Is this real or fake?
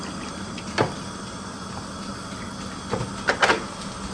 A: real